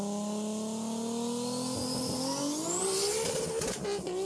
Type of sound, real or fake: real